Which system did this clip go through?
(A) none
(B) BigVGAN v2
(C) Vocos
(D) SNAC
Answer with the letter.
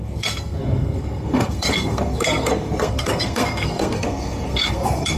D